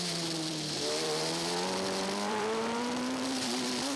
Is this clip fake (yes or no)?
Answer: yes